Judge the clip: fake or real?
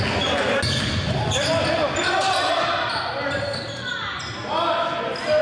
real